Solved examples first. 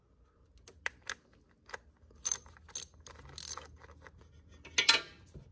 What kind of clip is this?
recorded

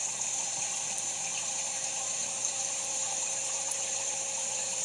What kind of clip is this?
remade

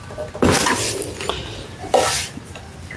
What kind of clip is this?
recorded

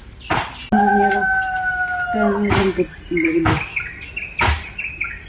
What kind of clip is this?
recorded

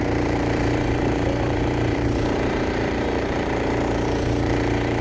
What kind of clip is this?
remade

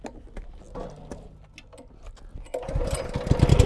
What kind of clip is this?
recorded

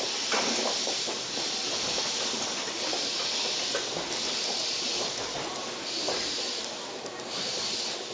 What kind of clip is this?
remade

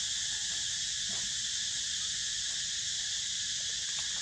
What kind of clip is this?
recorded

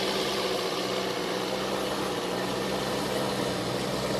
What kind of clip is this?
recorded